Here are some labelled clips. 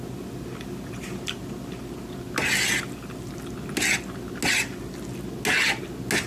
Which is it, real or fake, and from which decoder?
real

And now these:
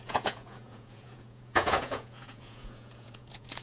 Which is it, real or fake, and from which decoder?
fake, vocoder, Vocos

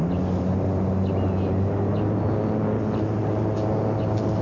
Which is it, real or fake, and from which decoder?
real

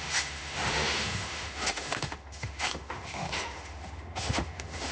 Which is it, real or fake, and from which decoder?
fake, autoencoder, DAC-VAE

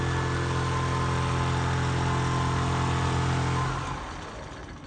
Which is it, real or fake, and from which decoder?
real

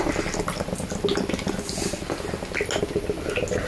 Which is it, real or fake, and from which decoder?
real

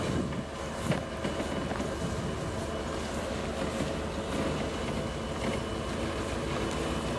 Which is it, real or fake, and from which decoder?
real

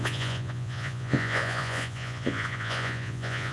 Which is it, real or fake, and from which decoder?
fake, vocoder, Vocos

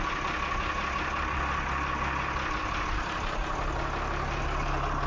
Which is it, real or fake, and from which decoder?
real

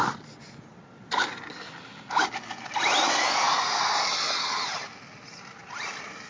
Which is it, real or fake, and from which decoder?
real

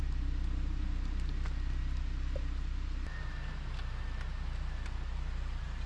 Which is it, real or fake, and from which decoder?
real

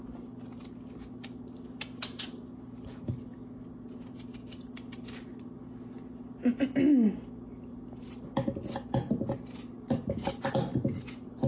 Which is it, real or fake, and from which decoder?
real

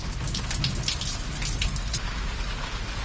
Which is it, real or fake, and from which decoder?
real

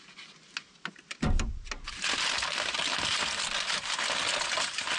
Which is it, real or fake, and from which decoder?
real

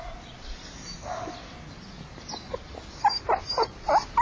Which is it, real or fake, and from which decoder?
real